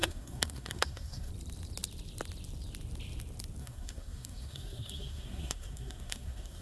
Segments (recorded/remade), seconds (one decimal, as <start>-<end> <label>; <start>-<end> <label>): 0.0-1.3 remade; 1.3-3.6 recorded; 3.6-6.6 remade